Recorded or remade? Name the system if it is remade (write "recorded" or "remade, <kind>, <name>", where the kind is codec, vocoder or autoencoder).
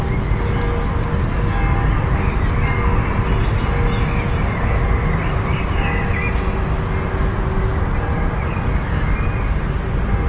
recorded